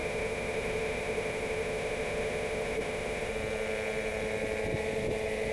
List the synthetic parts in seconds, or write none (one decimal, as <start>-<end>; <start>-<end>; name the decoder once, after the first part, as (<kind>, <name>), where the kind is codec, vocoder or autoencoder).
0.0-3.3 (autoencoder, DAC-VAE)